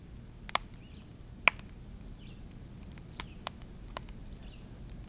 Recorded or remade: recorded